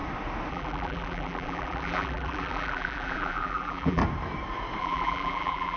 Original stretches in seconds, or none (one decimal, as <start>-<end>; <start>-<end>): 0.0-0.5; 4.0-4.8

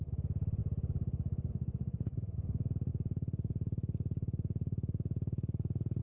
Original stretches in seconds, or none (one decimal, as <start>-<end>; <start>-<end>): 0.0-6.0

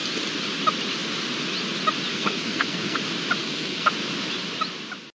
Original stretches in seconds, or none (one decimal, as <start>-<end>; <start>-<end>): 0.0-2.1; 3.0-3.4; 3.9-5.1

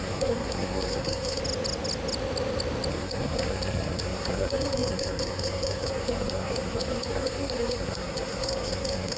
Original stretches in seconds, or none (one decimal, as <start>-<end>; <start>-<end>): 1.4-2.9